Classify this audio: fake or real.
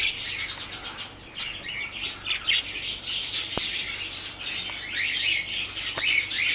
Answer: real